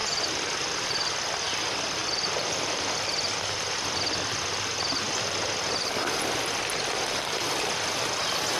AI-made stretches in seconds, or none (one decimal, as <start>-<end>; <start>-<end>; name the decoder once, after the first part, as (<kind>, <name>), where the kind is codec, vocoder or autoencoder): 0.0-1.6 (vocoder, BigVGAN v2); 2.0-4.8